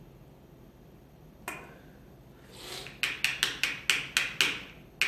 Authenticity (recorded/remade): recorded